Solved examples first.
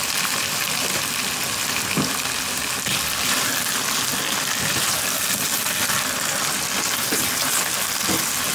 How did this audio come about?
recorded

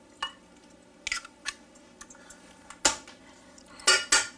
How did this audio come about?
recorded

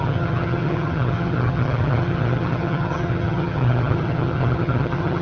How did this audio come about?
remade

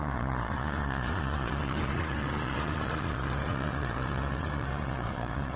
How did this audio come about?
remade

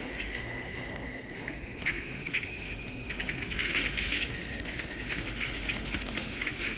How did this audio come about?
remade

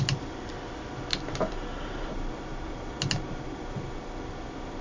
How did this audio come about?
recorded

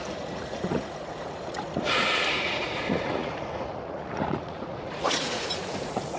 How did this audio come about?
remade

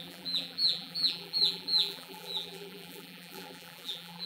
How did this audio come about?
remade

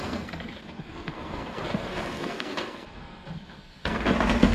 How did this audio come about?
remade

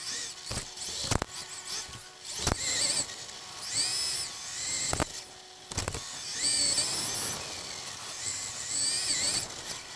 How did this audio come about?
recorded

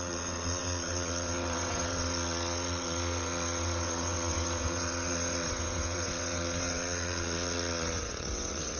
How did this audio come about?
remade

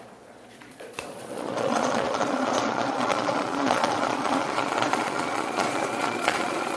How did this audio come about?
remade